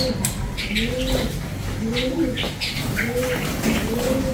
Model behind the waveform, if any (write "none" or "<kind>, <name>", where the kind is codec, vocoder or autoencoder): none